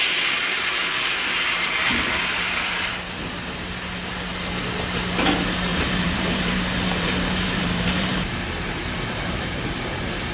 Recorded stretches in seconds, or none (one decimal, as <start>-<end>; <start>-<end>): 0.0-5.7